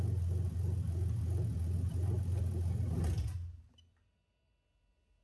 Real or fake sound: real